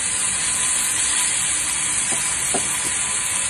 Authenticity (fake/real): real